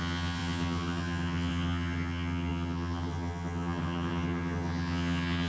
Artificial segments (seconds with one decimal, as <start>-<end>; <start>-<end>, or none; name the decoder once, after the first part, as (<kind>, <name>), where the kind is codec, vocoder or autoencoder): 0.0-5.5 (vocoder, HiFi-GAN)

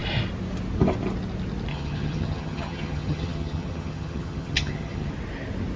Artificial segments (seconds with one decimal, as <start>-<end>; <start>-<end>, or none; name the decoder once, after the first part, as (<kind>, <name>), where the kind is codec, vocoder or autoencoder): 1.7-5.1 (vocoder, HiFi-GAN)

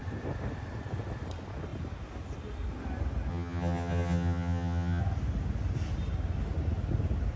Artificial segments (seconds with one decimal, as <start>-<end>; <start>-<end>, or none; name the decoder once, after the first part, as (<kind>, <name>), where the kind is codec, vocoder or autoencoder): 3.3-5.0 (vocoder, HiFi-GAN)